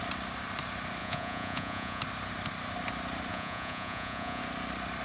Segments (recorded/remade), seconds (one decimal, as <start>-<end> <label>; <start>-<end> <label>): 0.0-1.0 recorded; 1.0-2.0 remade; 2.0-3.3 recorded; 3.3-4.4 remade; 4.4-5.0 recorded